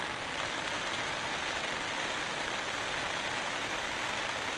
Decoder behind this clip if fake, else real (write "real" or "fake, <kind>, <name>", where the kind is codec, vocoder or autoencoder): real